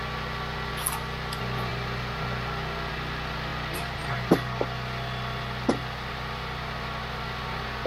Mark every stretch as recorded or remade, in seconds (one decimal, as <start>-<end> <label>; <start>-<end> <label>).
0.0-7.9 recorded